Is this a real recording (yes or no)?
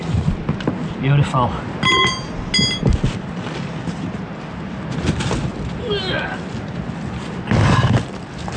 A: yes